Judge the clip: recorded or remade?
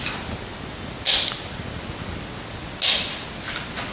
recorded